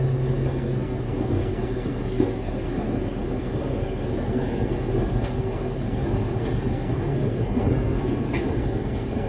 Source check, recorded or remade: remade